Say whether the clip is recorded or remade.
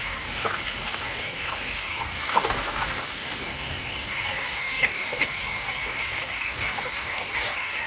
remade